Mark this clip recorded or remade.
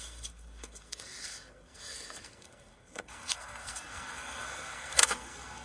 remade